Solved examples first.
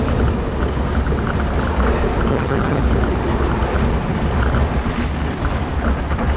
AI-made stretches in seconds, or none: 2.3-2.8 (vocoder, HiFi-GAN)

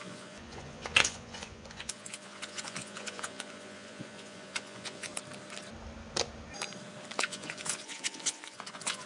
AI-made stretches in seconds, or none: 0.0-5.1 (vocoder, Vocos); 7.2-9.1

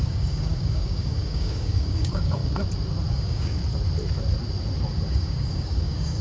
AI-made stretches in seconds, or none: 0.0-2.4 (codec, DAC); 3.1-3.6; 5.1-6.2

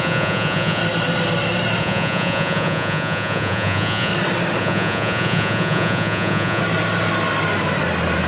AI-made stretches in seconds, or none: 0.0-0.8 (vocoder, Vocos); 1.8-4.1; 4.6-6.6

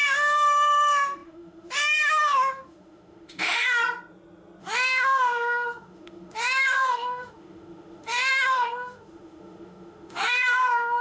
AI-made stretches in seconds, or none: 0.0-3.8 (autoencoder, DAC-VAE); 4.6-11.0

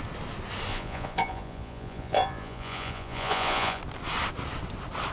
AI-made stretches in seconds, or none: 0.7-3.8 (vocoder, Vocos)

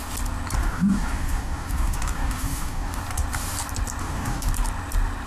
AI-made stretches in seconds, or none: 0.6-3.0 (codec, DAC); 4.0-4.5

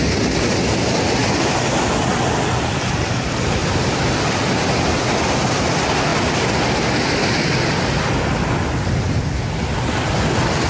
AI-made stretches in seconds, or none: none